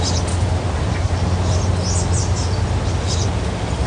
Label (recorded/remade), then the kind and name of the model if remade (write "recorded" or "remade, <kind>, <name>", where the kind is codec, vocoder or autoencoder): recorded